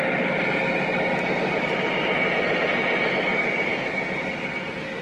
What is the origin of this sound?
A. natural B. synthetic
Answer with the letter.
A